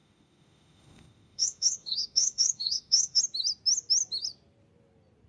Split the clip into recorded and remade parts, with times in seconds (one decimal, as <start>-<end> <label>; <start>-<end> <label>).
0.0-3.2 remade; 3.2-5.3 recorded